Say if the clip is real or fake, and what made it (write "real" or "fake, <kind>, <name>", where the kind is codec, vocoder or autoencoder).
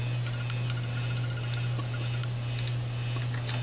real